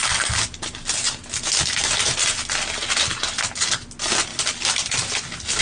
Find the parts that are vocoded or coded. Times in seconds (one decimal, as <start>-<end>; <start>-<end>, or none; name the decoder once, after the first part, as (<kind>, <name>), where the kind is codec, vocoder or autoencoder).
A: none